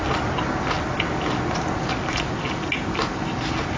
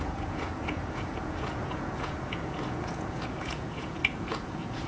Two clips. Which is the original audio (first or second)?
first